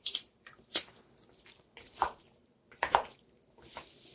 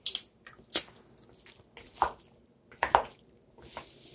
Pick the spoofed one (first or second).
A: first